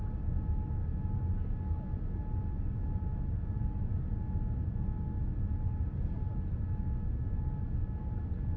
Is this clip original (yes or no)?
yes